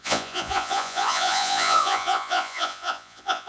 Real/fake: fake